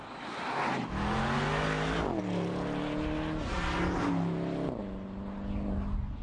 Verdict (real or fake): real